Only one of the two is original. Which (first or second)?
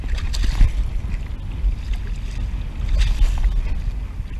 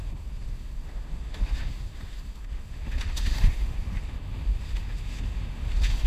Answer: first